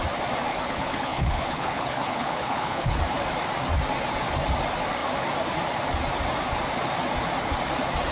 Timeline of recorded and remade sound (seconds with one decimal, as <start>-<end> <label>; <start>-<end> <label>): 0.0-0.5 recorded; 0.5-3.0 remade; 3.0-8.1 recorded